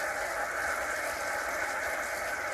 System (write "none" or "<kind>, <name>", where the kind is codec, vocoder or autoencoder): none